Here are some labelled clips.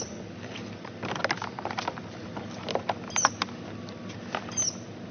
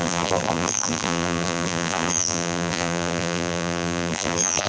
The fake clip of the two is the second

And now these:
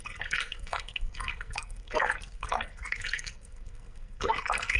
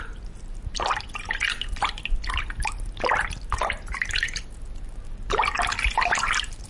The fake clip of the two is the first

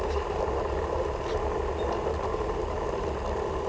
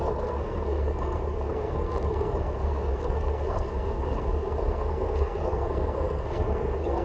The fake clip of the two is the second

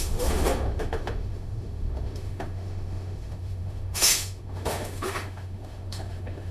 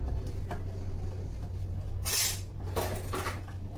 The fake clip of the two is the first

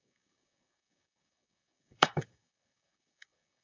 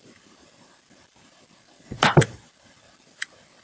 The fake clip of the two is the first